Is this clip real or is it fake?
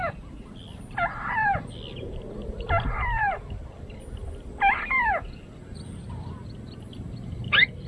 real